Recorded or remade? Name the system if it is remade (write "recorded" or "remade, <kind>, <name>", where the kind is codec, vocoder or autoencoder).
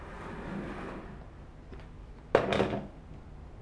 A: recorded